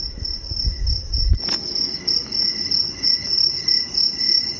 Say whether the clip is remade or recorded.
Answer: recorded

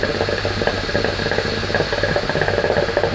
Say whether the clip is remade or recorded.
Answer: recorded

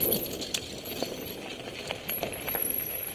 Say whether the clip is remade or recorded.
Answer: recorded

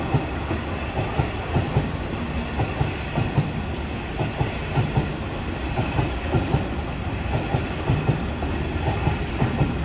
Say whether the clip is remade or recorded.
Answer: recorded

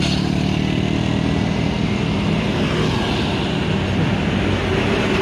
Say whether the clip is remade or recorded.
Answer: recorded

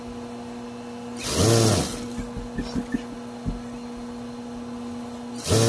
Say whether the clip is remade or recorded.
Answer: recorded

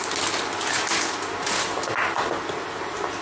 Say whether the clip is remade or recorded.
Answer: recorded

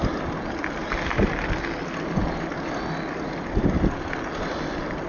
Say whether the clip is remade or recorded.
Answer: recorded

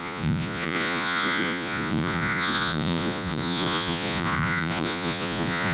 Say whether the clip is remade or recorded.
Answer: remade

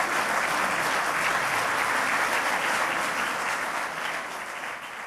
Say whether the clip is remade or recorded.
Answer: recorded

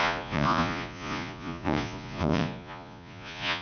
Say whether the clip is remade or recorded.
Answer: remade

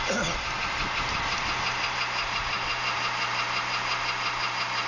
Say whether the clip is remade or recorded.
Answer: recorded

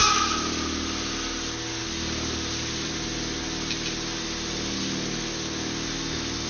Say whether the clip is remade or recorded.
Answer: recorded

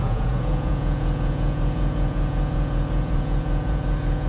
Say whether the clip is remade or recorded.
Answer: remade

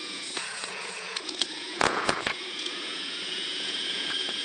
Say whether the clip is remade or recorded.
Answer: remade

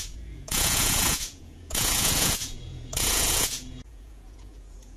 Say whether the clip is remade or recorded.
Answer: remade